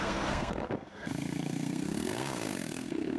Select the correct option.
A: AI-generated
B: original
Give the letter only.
A